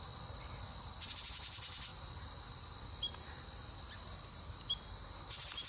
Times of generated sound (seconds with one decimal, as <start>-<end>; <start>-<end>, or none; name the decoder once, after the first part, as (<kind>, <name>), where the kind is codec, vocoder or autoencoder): none